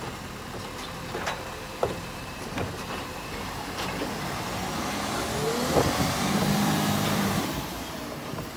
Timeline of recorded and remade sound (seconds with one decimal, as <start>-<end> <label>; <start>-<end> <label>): 0.0-4.6 remade; 4.6-5.9 recorded; 5.9-8.6 remade